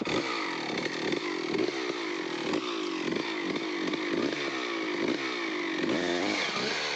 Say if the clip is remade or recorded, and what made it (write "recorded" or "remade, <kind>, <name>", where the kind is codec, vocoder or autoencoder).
recorded